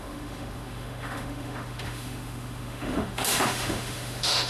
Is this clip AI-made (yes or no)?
yes